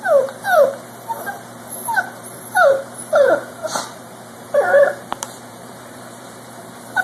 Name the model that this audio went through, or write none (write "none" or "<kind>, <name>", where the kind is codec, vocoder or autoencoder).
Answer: vocoder, BigVGAN v2